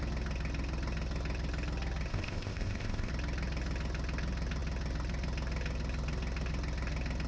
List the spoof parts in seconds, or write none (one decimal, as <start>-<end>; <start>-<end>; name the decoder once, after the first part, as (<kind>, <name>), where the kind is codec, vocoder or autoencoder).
2.1-3.1 (codec, ZipCodec)